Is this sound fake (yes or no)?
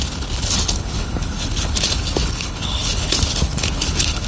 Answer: yes